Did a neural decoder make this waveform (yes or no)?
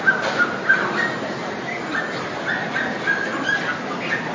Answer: no